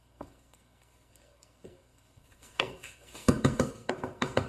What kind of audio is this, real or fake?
fake